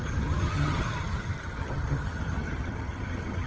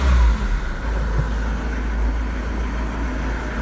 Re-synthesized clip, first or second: first